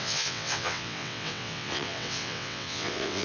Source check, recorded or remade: remade